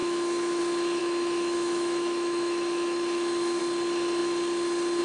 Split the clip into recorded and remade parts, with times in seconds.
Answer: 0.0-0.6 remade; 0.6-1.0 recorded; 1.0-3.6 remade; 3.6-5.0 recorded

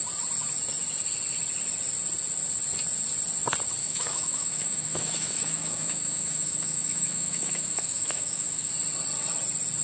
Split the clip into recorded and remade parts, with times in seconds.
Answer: 0.0-3.8 recorded; 3.8-8.7 remade; 8.7-9.8 recorded

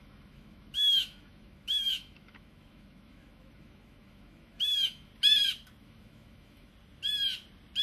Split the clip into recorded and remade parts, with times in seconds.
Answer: 0.0-5.1 remade; 5.1-5.8 recorded; 5.8-6.7 remade; 6.7-7.8 recorded